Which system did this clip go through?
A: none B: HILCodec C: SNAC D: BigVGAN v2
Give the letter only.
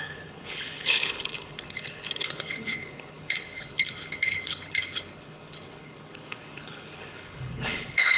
B